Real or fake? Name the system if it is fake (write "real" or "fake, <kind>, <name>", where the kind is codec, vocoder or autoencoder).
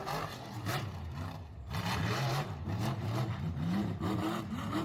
fake, vocoder, BigVGAN v2